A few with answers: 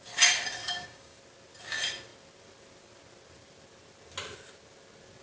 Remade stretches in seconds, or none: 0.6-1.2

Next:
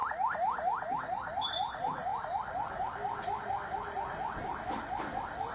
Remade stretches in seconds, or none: none

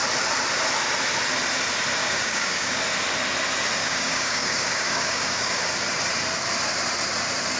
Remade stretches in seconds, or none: 2.0-2.8; 3.8-5.6